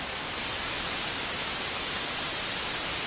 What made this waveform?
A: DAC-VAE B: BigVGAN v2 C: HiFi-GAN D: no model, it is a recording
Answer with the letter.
D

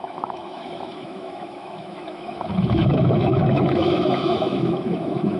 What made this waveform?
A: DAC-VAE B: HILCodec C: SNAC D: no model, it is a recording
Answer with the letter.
A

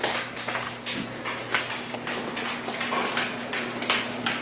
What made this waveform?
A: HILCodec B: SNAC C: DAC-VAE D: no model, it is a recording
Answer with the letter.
D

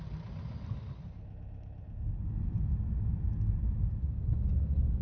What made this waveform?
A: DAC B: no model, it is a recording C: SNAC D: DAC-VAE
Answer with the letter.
B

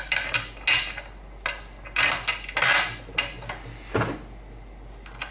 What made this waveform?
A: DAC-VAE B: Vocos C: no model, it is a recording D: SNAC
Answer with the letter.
C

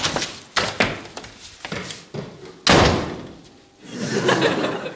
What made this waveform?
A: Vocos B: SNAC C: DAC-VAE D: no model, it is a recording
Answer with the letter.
D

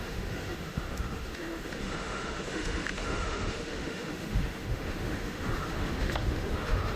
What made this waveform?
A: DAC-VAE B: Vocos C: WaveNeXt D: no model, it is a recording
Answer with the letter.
A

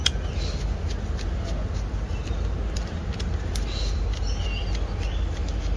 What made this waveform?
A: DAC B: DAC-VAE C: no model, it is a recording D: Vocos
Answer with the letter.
C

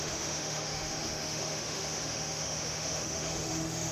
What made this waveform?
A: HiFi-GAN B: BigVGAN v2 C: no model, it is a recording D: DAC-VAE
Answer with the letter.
D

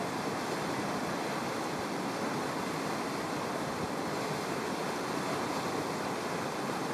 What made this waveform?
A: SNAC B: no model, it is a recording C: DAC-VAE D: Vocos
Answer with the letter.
B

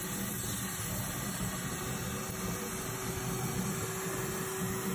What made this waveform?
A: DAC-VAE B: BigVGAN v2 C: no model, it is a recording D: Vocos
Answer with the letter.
C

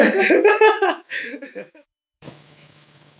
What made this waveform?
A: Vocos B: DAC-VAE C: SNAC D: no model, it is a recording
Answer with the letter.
B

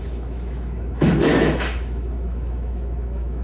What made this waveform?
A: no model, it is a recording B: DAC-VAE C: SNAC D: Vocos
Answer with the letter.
B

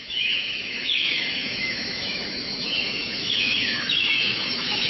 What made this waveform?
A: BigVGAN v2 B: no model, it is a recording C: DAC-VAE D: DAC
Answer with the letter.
C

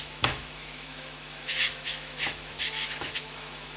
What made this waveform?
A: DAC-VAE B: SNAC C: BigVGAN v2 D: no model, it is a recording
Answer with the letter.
A